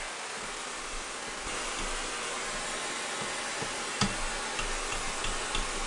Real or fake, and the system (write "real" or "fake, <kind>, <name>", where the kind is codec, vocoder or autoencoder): real